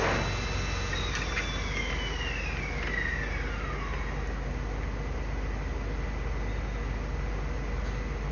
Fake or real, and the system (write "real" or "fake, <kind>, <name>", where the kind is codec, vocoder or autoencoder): real